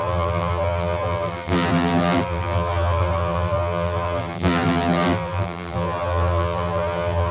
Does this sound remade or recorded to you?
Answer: remade